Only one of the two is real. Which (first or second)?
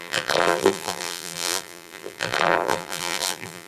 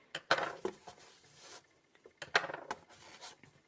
second